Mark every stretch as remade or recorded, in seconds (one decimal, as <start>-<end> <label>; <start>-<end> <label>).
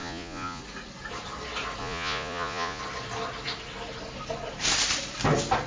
0.0-0.6 remade; 0.6-1.8 recorded; 1.8-2.8 remade; 2.8-5.7 recorded